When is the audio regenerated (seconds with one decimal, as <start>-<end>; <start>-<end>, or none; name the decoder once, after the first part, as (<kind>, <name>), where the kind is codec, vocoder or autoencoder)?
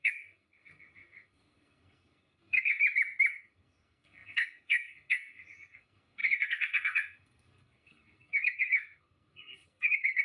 0.0-2.8 (codec, SNAC); 3.3-10.2